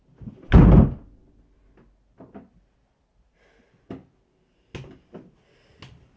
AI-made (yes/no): no